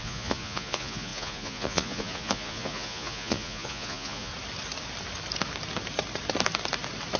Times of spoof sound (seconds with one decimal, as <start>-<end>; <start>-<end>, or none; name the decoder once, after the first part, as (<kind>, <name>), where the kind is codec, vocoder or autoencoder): 0.0-4.3 (vocoder, Vocos)